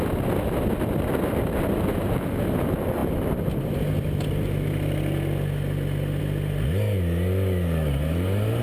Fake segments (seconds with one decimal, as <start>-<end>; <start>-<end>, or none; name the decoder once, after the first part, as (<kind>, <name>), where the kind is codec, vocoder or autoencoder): none